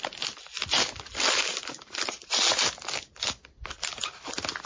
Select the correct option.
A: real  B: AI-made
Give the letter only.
A